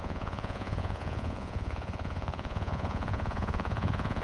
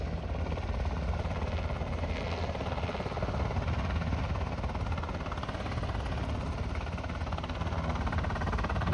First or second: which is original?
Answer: second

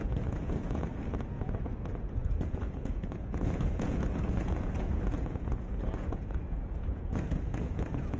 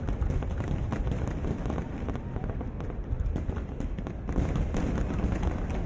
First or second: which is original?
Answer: second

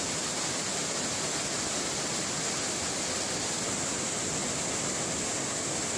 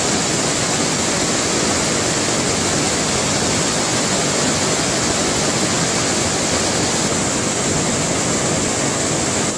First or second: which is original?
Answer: first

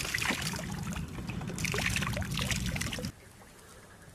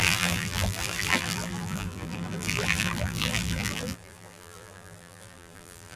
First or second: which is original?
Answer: first